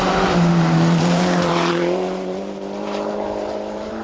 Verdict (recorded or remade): remade